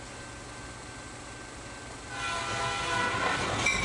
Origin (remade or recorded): recorded